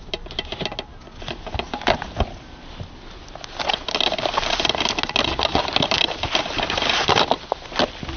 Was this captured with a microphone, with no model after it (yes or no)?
yes